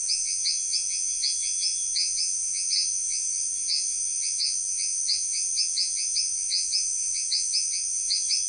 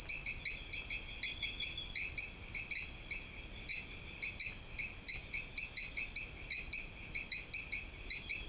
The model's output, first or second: first